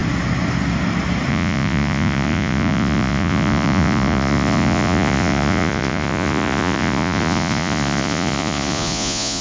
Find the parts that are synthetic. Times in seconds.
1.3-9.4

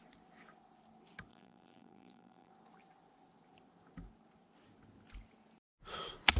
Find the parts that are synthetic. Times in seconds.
1.3-2.5

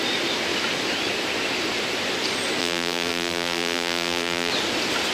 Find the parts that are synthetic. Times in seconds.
2.6-4.5